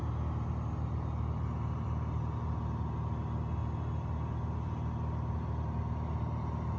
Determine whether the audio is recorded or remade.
recorded